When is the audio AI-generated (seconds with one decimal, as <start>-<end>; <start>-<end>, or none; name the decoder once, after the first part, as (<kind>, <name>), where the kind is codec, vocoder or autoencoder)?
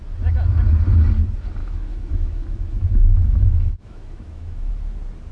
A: 1.6-4.7 (autoencoder, DAC-VAE)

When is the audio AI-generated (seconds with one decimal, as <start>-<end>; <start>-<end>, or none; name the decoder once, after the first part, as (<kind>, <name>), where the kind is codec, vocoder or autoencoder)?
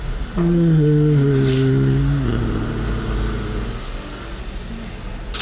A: none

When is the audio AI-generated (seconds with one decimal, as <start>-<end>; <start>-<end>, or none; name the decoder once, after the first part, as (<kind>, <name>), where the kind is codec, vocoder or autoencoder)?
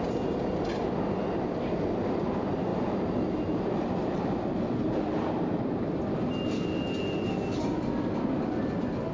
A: 2.7-6.0 (vocoder, BigVGAN v2)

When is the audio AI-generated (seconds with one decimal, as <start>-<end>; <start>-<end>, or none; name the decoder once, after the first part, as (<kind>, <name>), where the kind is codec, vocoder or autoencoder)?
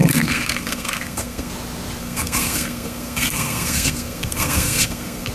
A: 0.0-1.5 (codec, SNAC); 2.0-5.3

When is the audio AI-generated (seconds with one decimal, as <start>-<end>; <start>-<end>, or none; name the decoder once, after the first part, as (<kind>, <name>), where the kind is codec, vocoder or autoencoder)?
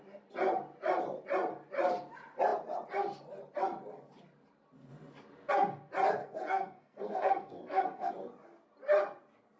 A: 6.2-8.1 (codec, SNAC)